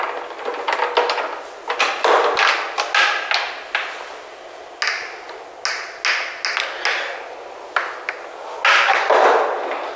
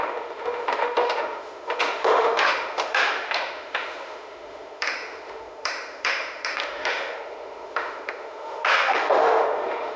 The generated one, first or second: second